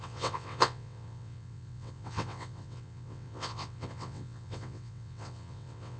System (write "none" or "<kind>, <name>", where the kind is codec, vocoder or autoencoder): vocoder, WaveNeXt